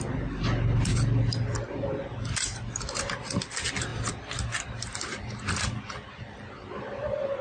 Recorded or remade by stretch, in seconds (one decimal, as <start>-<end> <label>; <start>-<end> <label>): 0.0-7.4 recorded